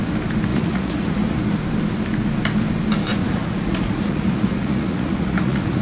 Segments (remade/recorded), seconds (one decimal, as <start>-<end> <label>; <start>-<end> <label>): 0.0-0.5 recorded; 0.5-1.4 remade; 1.4-3.2 recorded; 3.2-5.8 remade